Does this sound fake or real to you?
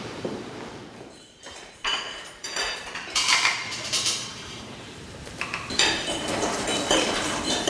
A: fake